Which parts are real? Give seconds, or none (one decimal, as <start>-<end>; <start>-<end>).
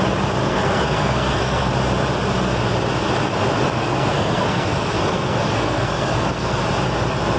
0.0-0.4; 1.7-3.8; 6.6-7.4